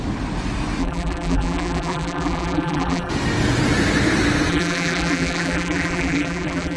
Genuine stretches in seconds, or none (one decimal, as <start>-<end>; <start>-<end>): 0.0-0.8; 3.1-4.5